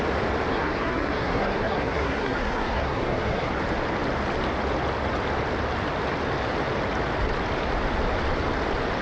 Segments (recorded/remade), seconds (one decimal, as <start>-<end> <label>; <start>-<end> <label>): 0.0-0.5 recorded; 0.5-3.5 remade; 3.5-9.0 recorded